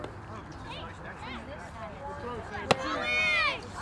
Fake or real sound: real